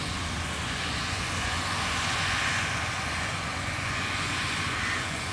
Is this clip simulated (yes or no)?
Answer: yes